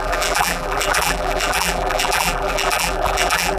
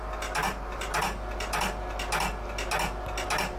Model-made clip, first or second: first